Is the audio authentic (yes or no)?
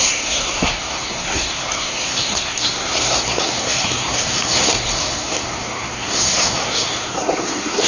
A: no